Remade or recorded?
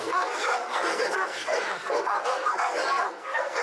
remade